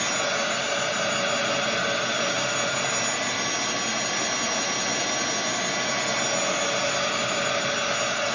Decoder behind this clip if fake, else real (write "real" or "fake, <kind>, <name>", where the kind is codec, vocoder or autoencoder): real